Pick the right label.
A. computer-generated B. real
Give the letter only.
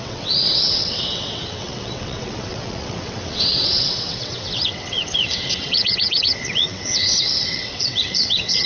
A